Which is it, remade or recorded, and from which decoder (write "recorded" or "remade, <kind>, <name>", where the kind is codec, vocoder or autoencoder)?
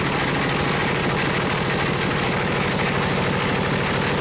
recorded